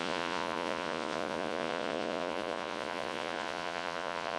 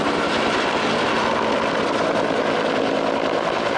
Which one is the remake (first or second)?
first